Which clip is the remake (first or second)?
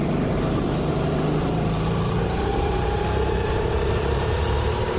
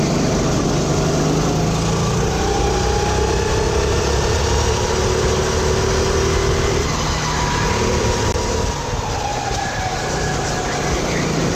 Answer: first